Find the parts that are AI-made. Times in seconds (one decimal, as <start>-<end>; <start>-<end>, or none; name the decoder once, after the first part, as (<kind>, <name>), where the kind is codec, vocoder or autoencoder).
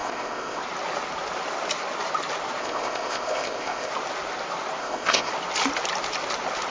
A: 0.0-0.6 (codec, ZipCodec); 2.6-3.9; 4.8-5.3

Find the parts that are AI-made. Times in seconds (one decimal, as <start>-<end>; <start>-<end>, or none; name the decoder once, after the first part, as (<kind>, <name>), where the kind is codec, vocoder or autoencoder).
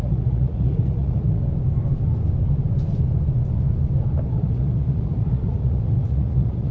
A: 0.0-1.4 (vocoder, Vocos); 4.3-6.7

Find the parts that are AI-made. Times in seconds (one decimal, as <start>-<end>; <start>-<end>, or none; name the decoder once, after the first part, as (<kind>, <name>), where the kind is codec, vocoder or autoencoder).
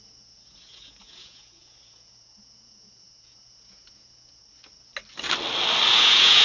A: 0.0-4.4 (vocoder, Vocos); 5.9-6.4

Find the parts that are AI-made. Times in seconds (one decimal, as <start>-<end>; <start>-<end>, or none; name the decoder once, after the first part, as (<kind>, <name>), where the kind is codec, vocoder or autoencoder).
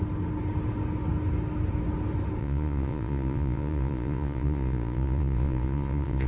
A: 2.4-6.3 (vocoder, Vocos)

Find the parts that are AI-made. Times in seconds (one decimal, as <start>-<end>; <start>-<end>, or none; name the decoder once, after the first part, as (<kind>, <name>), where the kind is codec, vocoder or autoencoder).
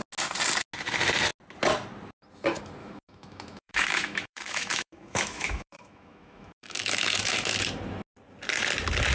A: 2.8-7.6 (autoencoder, DAC-VAE)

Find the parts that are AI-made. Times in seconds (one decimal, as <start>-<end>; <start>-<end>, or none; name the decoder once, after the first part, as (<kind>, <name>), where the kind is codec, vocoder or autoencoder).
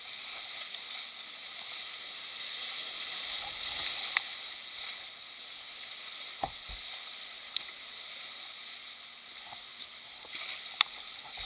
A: none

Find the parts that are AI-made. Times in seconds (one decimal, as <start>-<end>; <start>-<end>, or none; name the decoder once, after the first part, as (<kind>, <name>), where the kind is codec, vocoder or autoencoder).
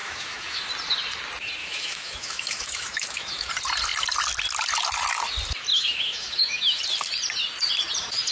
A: 0.0-0.6 (autoencoder, DAC-VAE); 1.6-3.5; 5.7-6.8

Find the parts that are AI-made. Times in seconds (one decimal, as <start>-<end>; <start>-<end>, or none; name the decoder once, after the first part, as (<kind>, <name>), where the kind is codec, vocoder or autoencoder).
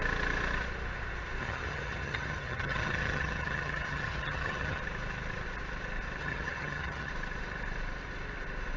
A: 1.4-4.8 (vocoder, HiFi-GAN); 6.2-7.1